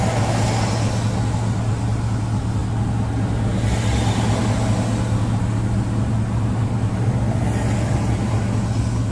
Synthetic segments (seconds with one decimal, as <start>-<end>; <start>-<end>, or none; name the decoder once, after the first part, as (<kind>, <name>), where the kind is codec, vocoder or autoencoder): none